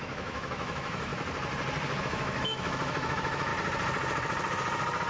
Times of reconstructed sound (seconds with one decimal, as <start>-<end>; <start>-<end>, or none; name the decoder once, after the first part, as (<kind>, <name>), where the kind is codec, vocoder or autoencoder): 0.0-1.1 (autoencoder, DAC-VAE); 2.0-3.5